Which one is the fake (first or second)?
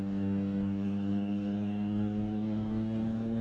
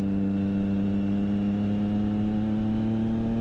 first